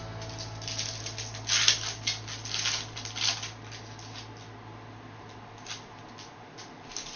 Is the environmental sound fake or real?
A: real